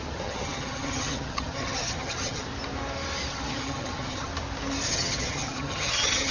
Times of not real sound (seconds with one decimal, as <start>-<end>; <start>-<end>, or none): 0.0-2.5; 3.3-4.3; 4.9-6.3